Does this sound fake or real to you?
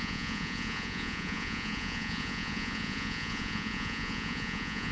fake